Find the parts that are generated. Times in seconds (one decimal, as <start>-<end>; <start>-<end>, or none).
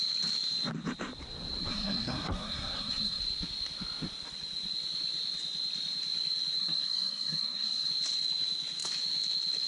1.7-3.2; 6.6-7.9